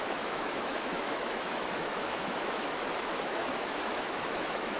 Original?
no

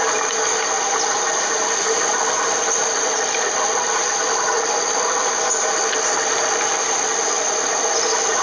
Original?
yes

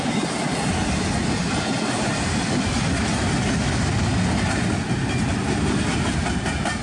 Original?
yes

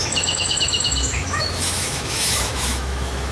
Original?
no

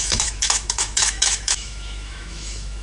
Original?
no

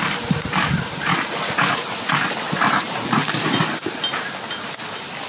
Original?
yes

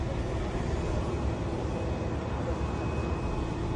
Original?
yes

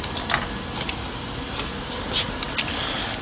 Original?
yes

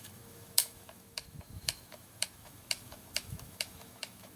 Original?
no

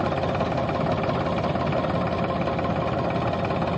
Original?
yes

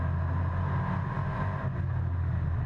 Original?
yes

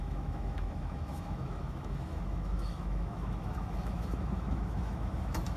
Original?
no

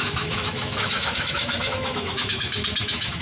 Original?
no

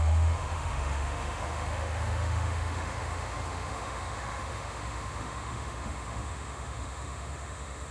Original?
no